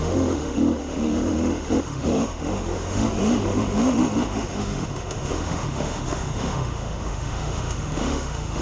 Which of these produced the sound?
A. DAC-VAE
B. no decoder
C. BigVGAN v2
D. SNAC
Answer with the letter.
A